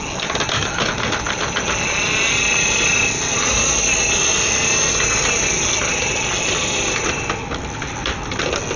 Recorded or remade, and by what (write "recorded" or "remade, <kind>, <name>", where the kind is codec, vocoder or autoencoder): recorded